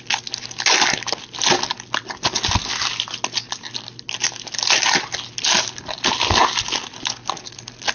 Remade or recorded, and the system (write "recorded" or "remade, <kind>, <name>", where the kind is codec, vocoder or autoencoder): recorded